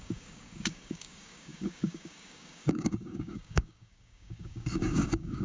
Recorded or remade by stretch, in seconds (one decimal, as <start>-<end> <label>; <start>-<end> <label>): 0.0-5.4 remade